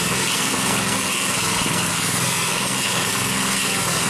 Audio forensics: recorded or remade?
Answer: remade